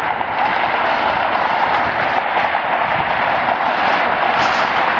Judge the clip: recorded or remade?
recorded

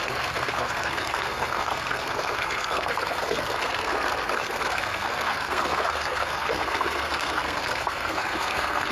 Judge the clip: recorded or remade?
remade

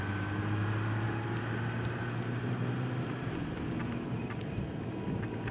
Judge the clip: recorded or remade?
recorded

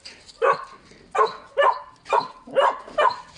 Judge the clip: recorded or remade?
recorded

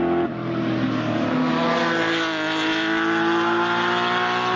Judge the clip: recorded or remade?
recorded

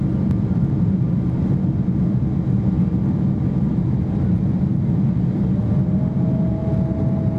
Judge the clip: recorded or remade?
recorded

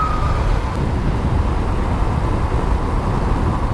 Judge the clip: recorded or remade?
recorded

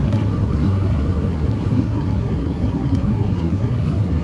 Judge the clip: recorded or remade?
remade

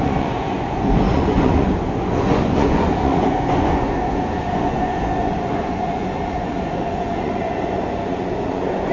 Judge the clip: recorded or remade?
remade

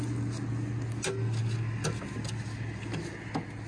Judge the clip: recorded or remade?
recorded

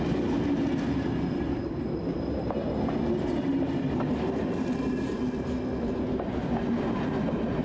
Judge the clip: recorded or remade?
recorded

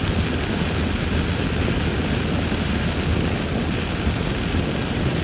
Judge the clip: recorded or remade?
recorded